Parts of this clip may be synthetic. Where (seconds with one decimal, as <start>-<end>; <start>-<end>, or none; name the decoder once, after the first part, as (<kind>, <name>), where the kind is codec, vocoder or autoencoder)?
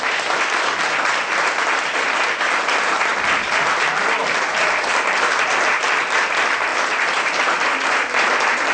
none